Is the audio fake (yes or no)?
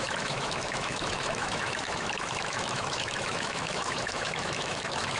yes